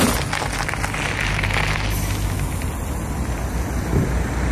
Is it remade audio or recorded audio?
recorded